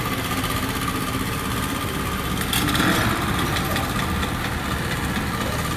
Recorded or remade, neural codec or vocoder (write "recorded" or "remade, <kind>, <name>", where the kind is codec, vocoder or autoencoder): recorded